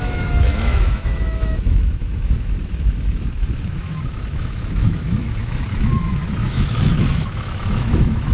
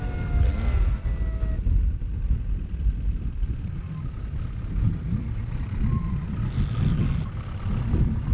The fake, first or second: first